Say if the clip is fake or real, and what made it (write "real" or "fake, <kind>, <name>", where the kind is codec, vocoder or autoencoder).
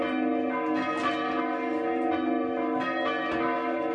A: real